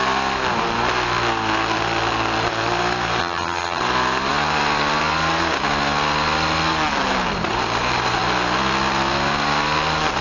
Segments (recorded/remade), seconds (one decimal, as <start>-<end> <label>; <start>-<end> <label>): 0.0-3.2 recorded; 3.2-3.8 remade; 3.8-10.2 recorded